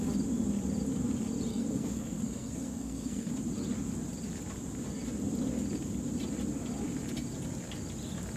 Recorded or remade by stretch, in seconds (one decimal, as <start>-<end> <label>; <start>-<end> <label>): 0.0-1.5 recorded; 1.5-3.3 remade; 3.3-8.4 recorded